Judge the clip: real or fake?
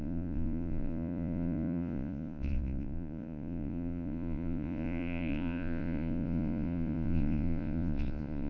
fake